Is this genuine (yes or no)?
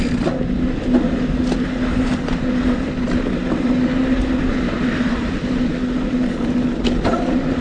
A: yes